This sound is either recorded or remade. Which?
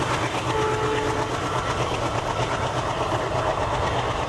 recorded